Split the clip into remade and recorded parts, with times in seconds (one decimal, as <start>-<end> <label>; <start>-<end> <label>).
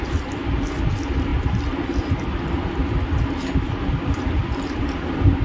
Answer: 0.0-5.4 recorded